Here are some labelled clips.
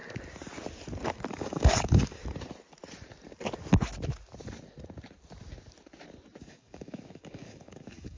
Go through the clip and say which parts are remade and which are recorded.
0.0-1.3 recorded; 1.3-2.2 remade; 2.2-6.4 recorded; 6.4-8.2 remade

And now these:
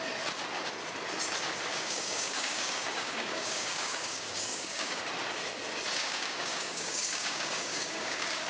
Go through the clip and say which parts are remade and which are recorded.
0.0-1.7 recorded; 1.7-5.0 remade; 5.0-6.0 recorded; 6.0-8.5 remade